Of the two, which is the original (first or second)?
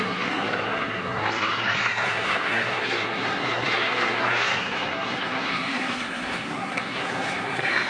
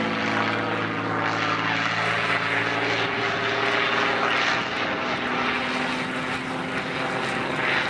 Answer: second